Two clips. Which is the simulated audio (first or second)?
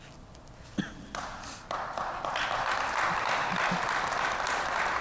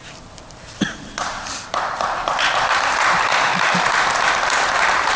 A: second